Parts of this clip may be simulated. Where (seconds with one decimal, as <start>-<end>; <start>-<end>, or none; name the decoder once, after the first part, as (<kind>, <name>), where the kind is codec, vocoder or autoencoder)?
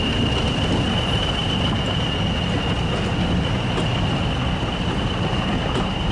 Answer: none